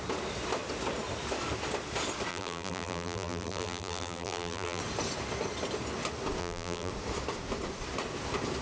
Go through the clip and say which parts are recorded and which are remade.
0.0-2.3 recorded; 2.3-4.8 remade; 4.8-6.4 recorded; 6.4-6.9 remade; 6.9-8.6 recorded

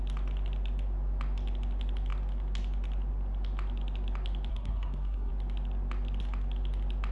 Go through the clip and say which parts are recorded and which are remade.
0.0-4.5 recorded; 4.5-5.3 remade; 5.3-7.1 recorded